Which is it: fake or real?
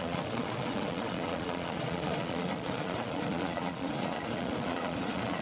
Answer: fake